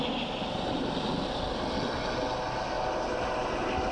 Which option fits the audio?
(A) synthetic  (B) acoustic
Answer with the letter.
B